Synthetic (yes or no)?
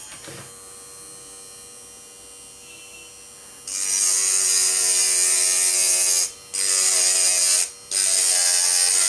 no